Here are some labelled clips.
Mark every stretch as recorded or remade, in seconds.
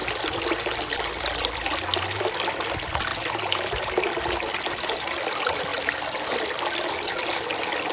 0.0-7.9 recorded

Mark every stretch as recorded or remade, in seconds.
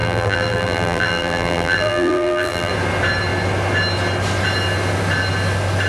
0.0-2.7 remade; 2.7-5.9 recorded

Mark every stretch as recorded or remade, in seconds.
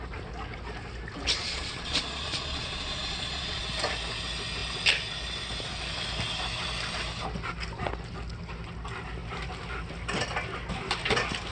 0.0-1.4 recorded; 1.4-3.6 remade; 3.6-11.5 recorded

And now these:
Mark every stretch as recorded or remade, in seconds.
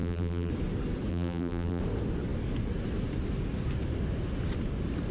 0.0-0.5 remade; 0.5-1.1 recorded; 1.1-1.8 remade; 1.8-5.1 recorded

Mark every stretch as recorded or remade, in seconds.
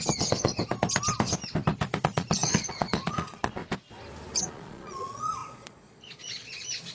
0.0-0.5 remade; 0.5-2.0 recorded; 2.0-3.6 remade; 3.6-4.4 recorded; 4.4-6.9 remade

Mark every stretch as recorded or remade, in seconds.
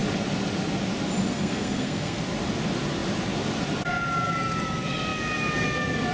0.0-1.3 recorded; 1.3-2.2 remade; 2.2-6.1 recorded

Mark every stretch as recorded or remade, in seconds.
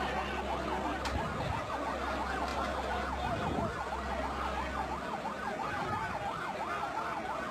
0.0-7.5 recorded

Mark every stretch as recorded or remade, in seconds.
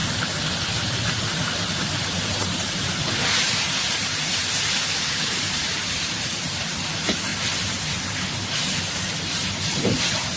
0.0-1.2 recorded; 1.2-4.4 remade; 4.4-5.3 recorded; 5.3-7.3 remade; 7.3-9.2 recorded; 9.2-10.4 remade